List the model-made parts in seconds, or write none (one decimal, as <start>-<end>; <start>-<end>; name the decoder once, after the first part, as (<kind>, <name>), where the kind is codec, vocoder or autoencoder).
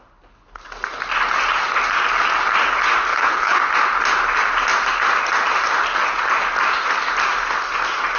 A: 3.1-3.6 (codec, HILCodec)